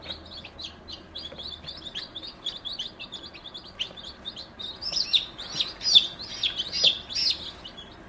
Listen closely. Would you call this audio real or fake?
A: real